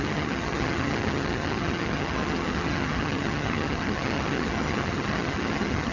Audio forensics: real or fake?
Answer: fake